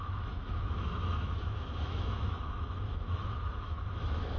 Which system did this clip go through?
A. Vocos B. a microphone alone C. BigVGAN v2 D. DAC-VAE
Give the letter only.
D